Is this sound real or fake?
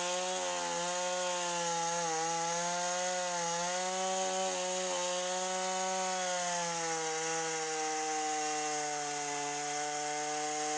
real